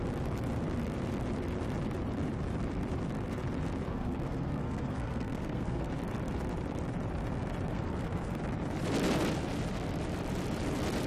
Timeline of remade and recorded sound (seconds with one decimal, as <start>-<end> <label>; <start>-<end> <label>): 0.0-3.9 recorded; 3.9-5.9 remade; 5.9-7.7 recorded; 7.7-8.4 remade; 8.4-11.1 recorded